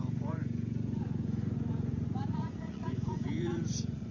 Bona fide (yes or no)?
no